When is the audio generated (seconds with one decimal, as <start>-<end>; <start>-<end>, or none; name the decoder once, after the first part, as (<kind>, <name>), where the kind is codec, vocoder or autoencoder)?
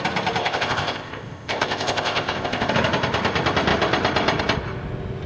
0.4-2.7 (codec, ZipCodec)